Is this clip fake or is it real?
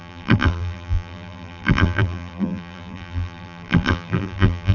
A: fake